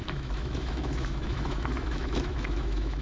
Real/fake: fake